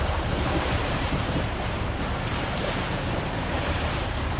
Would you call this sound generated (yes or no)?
yes